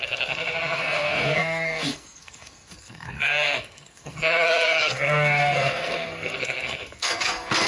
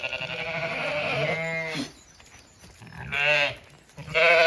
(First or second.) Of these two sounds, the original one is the second